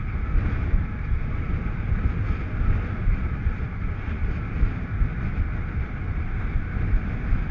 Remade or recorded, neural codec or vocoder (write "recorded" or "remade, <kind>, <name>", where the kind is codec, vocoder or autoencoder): recorded